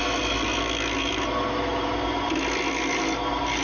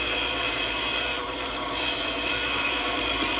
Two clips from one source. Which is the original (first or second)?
first